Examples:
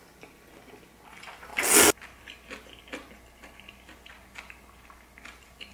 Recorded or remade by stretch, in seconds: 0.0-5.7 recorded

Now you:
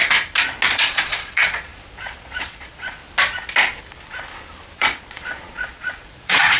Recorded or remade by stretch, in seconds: 0.0-0.7 recorded; 0.7-3.0 remade; 3.0-4.8 recorded; 4.8-6.6 remade

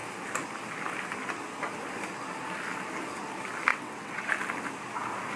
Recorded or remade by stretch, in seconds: 0.0-3.7 recorded; 3.7-4.3 remade; 4.3-5.4 recorded

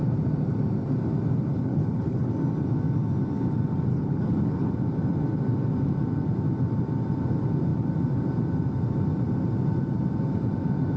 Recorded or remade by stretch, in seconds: 0.0-1.5 recorded; 1.5-2.3 remade; 2.3-3.9 recorded; 3.9-4.7 remade; 4.7-11.0 recorded

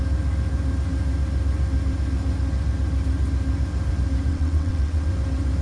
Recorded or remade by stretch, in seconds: 0.0-4.3 recorded; 4.3-5.1 remade; 5.1-5.6 recorded

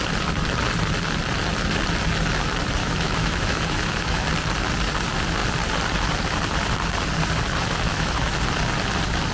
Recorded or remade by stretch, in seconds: 0.0-2.8 recorded; 2.8-4.3 remade; 4.3-7.9 recorded; 7.9-8.4 remade; 8.4-9.3 recorded